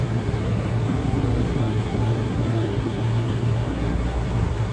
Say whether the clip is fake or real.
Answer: fake